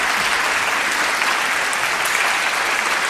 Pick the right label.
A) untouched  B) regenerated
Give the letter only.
A